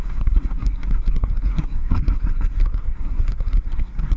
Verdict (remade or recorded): remade